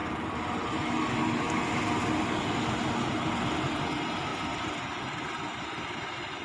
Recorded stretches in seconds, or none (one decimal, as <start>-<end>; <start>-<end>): 0.0-4.3; 5.2-6.4